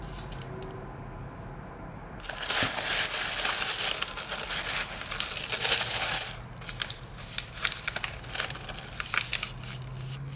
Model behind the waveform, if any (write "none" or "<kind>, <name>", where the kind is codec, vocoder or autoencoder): none